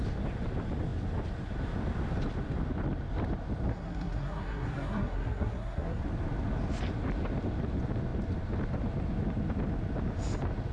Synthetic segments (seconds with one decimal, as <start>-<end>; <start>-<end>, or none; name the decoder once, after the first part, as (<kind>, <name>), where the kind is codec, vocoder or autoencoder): 3.7-6.0 (codec, SNAC)